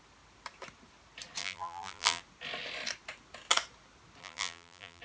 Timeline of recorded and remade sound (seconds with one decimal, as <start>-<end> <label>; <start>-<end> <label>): 0.0-1.4 recorded; 1.4-2.2 remade; 2.2-4.2 recorded; 4.2-5.0 remade